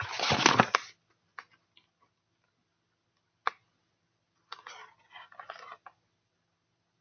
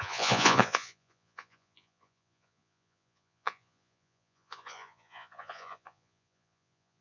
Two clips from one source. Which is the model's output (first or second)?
second